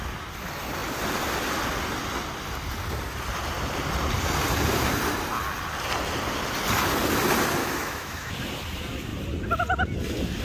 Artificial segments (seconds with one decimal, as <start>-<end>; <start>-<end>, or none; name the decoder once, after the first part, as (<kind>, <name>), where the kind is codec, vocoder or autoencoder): 7.6-8.3 (autoencoder, DAC-VAE)

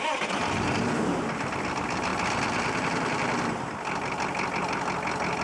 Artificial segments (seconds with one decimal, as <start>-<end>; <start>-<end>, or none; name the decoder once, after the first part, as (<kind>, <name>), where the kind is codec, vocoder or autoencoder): none